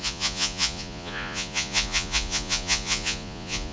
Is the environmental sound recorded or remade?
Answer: remade